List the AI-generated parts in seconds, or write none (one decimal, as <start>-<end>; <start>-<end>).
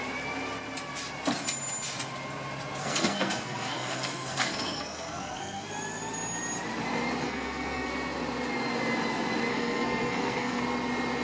2.8-5.7; 7.2-7.9; 9.5-10.6